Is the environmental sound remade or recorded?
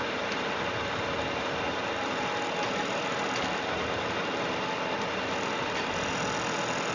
recorded